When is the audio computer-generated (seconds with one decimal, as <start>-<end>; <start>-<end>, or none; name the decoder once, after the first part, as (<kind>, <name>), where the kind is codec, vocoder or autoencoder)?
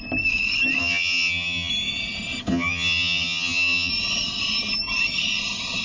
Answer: 0.8-1.7 (vocoder, HiFi-GAN); 2.5-3.9